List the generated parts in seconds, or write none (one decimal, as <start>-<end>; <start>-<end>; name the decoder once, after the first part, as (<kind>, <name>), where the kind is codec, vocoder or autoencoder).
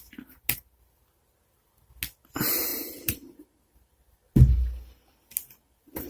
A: 2.7-4.1 (vocoder, BigVGAN v2)